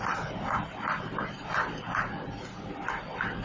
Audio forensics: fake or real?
real